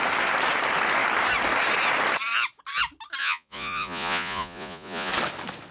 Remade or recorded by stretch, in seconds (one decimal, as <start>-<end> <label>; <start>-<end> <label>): 0.0-3.2 recorded; 3.2-5.1 remade; 5.1-5.7 recorded